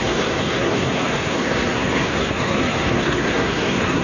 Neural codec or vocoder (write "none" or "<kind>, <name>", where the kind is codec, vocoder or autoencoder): codec, SNAC